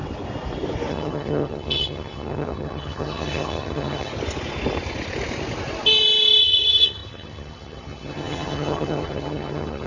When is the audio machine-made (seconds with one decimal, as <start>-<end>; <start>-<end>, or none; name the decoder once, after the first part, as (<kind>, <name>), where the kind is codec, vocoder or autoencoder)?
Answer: 0.9-4.1 (vocoder, HiFi-GAN); 6.4-9.9